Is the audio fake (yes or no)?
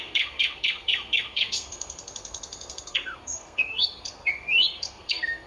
yes